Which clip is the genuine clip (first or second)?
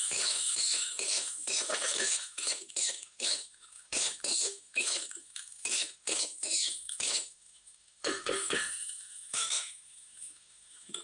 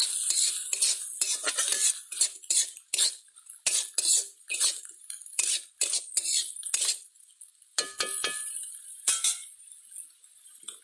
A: second